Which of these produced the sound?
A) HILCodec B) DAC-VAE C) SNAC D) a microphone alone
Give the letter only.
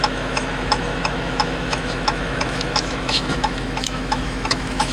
B